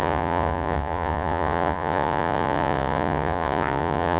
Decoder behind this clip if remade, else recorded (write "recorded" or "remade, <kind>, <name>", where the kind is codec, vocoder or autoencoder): remade, vocoder, Vocos